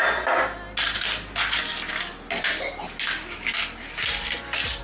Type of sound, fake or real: real